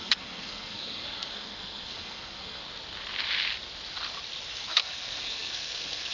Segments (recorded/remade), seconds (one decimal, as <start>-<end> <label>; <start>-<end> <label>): 0.0-2.6 remade; 2.6-4.5 recorded; 4.5-6.1 remade